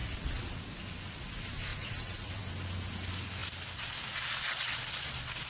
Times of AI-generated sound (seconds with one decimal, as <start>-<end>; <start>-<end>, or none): 0.0-0.6; 1.7-2.4